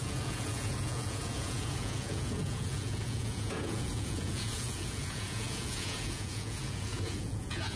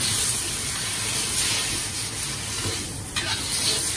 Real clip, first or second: second